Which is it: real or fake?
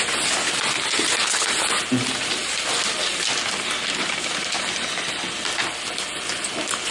real